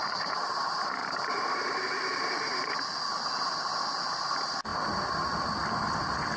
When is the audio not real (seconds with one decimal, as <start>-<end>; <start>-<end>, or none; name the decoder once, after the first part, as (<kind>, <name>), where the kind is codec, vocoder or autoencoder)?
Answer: 0.0-0.6 (vocoder, BigVGAN v2); 1.0-1.8